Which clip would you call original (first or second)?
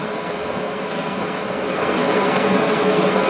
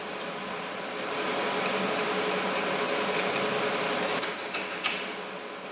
second